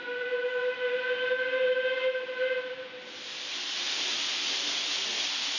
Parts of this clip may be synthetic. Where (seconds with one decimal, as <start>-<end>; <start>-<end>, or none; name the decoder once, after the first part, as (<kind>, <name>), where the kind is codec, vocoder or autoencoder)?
none

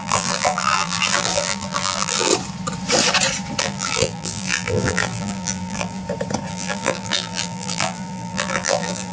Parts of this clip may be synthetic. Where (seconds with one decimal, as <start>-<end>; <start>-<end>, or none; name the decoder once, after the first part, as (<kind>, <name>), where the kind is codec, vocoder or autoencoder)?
0.0-2.3 (vocoder, BigVGAN v2); 3.6-6.0; 6.5-9.1

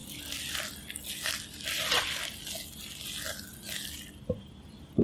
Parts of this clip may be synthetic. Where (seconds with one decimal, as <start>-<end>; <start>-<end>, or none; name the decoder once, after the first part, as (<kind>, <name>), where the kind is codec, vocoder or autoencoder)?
none

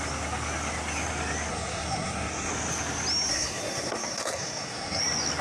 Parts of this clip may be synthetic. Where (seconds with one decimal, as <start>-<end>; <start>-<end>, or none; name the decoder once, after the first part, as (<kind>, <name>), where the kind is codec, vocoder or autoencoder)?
1.5-2.5 (codec, SNAC); 3.3-5.0

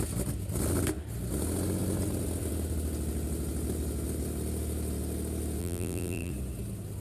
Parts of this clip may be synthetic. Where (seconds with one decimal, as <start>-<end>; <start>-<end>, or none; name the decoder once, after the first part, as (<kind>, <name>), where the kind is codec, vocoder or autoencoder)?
5.6-6.3 (vocoder, BigVGAN v2)

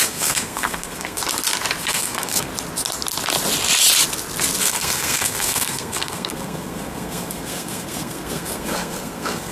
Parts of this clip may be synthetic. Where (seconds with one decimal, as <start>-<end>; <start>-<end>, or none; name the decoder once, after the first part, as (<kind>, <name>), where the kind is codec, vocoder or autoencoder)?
0.0-1.2 (codec, SNAC); 1.8-2.5; 4.6-9.5